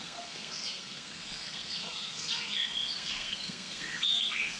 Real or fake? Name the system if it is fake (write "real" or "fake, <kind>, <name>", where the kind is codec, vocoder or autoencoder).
fake, codec, SNAC